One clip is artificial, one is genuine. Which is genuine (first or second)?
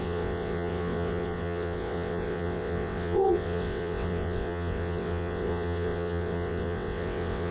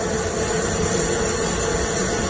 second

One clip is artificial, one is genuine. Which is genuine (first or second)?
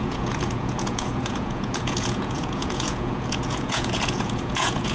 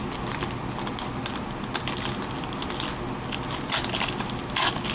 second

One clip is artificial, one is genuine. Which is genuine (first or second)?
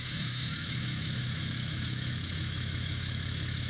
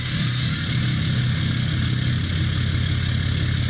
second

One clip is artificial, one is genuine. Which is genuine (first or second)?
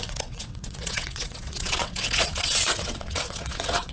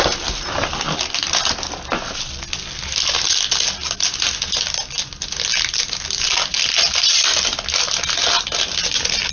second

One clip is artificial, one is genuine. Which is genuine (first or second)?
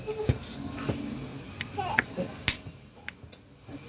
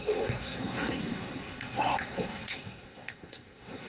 first